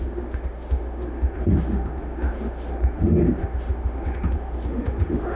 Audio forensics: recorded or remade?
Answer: remade